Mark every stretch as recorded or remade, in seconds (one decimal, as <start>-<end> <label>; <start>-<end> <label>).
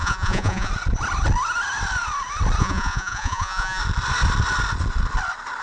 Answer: 0.0-0.7 remade; 0.7-2.6 recorded; 2.6-3.8 remade; 3.8-5.6 recorded